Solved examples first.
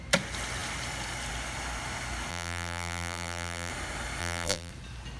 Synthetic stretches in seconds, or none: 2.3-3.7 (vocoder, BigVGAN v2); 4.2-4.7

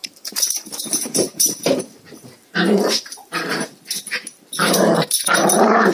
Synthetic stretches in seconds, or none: 0.0-5.9 (vocoder, BigVGAN v2)